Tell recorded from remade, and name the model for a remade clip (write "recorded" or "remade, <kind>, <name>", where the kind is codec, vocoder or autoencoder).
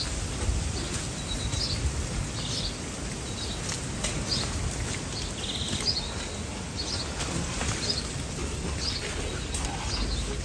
recorded